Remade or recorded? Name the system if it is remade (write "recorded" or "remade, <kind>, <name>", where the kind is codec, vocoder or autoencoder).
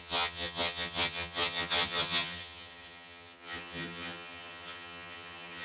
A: remade, vocoder, HiFi-GAN